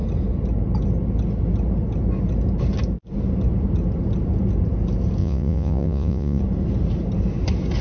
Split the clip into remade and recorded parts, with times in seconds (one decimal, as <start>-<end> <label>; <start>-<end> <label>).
0.0-5.2 recorded; 5.2-6.4 remade; 6.4-7.8 recorded